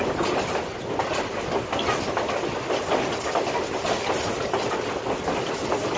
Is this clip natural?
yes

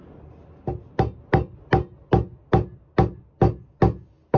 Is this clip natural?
yes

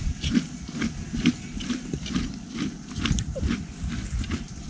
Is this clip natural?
yes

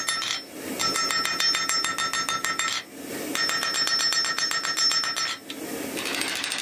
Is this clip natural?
yes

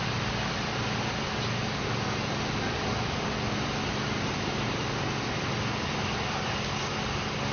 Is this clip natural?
yes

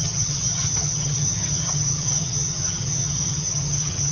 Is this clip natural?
no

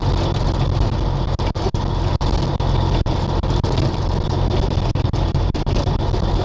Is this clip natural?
yes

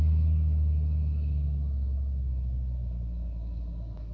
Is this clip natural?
yes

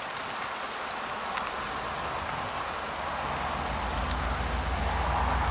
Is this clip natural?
yes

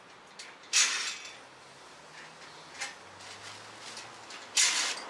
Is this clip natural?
yes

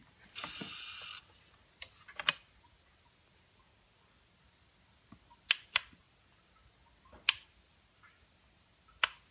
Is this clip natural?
yes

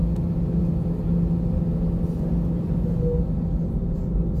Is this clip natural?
yes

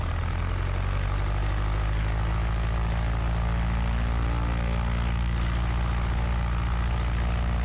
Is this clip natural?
yes